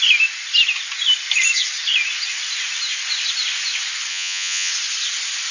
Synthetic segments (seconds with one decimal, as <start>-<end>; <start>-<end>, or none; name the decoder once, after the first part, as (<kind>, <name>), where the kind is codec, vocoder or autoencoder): 4.1-4.7 (vocoder, Vocos)